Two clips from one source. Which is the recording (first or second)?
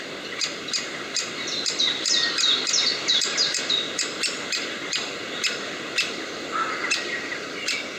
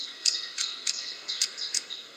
first